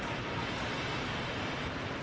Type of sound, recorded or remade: recorded